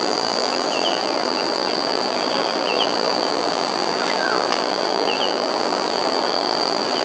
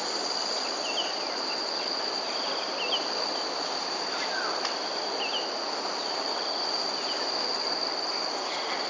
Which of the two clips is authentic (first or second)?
second